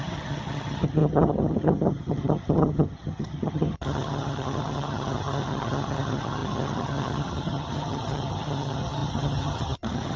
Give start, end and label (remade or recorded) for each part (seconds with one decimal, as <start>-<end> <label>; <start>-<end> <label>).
0.0-10.2 remade